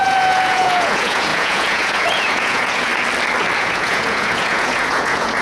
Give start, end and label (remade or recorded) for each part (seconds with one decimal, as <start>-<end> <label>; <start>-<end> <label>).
0.0-2.9 remade; 2.9-3.6 recorded; 3.6-5.4 remade